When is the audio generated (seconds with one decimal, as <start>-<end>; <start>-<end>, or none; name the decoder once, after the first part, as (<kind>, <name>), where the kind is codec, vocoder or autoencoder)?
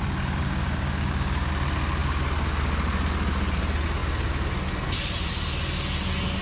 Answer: 0.4-1.5 (codec, DAC)